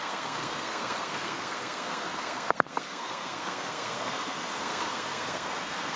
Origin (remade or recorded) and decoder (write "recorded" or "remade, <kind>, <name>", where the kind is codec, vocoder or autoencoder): remade, codec, SNAC